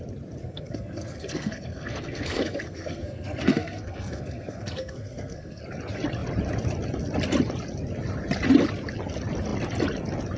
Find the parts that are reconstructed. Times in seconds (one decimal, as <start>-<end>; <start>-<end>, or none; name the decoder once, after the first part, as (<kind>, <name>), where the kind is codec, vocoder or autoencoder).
0.4-5.6 (codec, SNAC)